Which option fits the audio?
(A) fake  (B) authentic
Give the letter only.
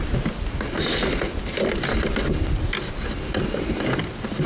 B